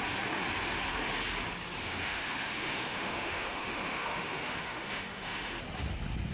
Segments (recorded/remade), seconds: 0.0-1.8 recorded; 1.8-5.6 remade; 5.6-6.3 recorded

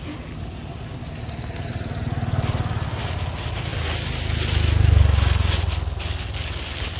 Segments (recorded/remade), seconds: 0.0-7.0 recorded

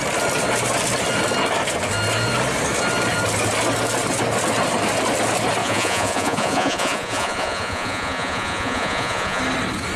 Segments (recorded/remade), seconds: 0.0-5.6 recorded; 5.6-9.4 remade; 9.4-10.0 recorded

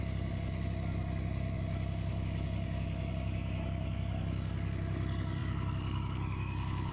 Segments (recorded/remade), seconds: 0.0-6.9 remade

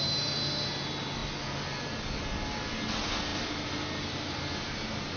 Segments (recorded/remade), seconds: 0.0-5.2 recorded

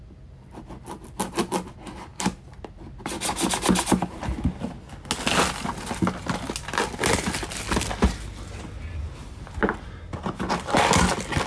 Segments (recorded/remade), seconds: 0.0-11.5 recorded

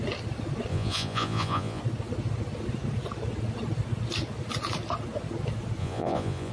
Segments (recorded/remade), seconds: 0.0-0.7 recorded; 0.7-1.8 remade; 1.8-5.8 recorded; 5.8-6.5 remade

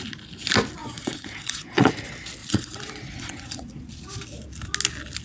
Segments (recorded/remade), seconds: 0.0-0.8 recorded; 0.8-1.9 remade; 1.9-2.4 recorded; 2.4-3.8 remade; 3.8-5.2 recorded